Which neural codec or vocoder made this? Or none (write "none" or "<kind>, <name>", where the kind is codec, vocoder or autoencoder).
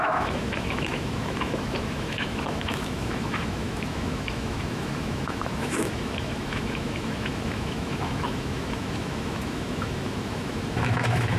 autoencoder, DAC-VAE